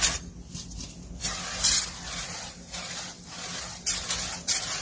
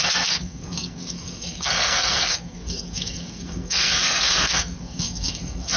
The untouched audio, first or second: first